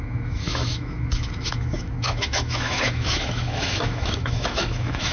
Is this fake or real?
fake